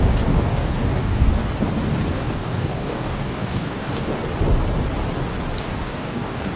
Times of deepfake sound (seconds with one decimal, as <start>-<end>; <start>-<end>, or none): 0.0-1.3; 2.1-4.2; 5.6-6.6